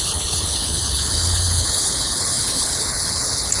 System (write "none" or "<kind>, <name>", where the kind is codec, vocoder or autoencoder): codec, HILCodec